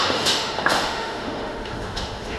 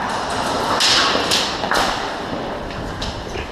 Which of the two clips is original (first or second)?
second